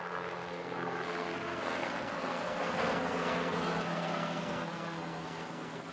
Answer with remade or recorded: remade